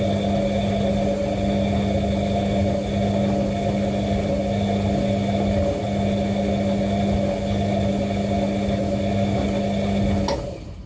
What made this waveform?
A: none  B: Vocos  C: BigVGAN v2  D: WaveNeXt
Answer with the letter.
A